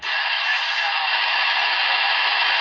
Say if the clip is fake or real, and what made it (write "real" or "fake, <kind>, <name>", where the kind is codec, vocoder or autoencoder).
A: fake, autoencoder, DAC-VAE